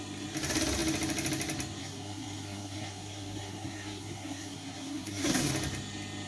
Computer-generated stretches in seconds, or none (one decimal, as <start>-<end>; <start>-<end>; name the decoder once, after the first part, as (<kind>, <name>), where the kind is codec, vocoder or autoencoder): 1.8-5.5 (codec, SNAC)